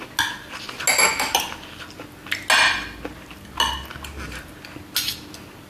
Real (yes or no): yes